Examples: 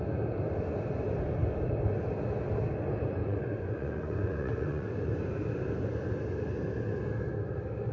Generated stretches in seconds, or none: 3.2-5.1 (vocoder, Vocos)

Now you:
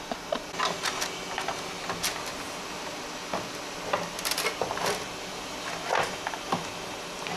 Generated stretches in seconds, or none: none

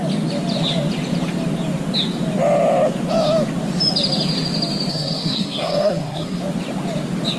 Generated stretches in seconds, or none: 4.9-6.4 (codec, SNAC)

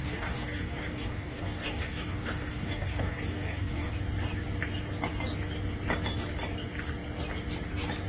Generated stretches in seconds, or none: 0.0-3.9 (codec, DAC)